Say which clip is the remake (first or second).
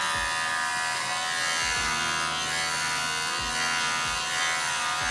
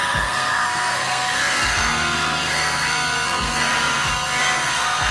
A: second